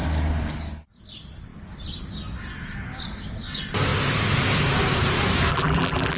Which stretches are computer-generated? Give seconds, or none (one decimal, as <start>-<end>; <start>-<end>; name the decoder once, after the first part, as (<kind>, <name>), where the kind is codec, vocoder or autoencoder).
5.5-6.2 (vocoder, BigVGAN v2)